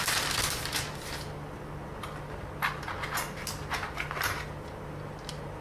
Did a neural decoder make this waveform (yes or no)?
no